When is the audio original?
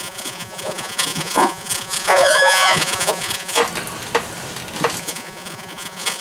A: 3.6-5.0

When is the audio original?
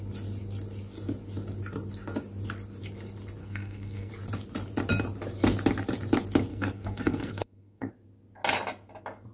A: 0.0-3.4; 4.1-6.5; 7.9-9.3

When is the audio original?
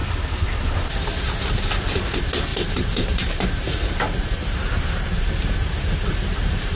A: 0.0-2.5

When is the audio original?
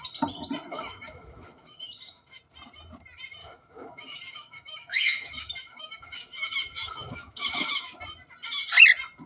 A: 0.0-0.7; 2.4-3.4; 8.0-9.3